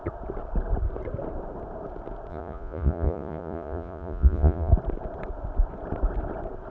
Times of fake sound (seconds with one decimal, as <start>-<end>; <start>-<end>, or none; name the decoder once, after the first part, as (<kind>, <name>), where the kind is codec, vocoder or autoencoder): 2.3-4.7 (vocoder, Vocos)

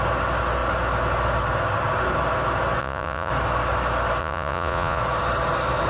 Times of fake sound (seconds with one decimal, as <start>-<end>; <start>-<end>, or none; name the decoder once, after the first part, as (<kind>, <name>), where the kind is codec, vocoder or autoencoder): 2.8-3.3 (vocoder, Vocos); 4.2-5.0

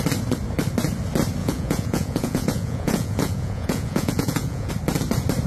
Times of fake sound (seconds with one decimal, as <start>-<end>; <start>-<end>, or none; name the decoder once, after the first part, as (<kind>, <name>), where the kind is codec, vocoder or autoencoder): 1.4-4.7 (vocoder, Vocos)

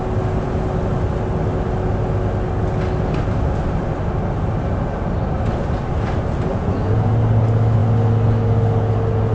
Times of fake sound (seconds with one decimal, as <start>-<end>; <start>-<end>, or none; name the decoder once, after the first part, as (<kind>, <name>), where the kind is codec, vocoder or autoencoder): 6.5-7.1 (vocoder, Vocos)

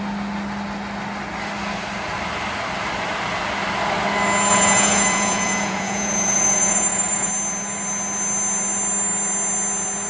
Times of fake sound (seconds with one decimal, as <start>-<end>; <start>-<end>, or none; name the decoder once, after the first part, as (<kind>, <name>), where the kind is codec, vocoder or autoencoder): 4.5-7.3 (vocoder, Vocos)

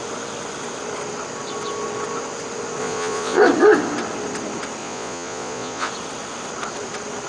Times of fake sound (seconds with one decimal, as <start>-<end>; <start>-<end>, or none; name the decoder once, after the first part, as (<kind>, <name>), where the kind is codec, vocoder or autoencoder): 2.8-3.4 (vocoder, Vocos); 4.8-5.9